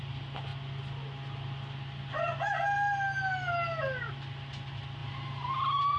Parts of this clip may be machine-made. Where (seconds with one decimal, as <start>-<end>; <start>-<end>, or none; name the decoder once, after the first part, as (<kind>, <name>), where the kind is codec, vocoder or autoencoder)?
none